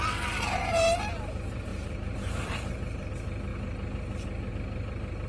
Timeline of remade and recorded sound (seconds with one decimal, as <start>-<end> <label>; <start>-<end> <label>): 0.0-1.7 recorded; 1.7-3.1 remade; 3.1-5.3 recorded